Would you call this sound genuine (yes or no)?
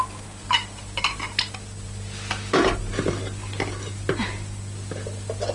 yes